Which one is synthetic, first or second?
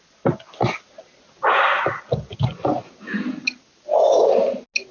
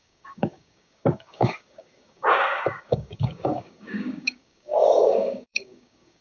second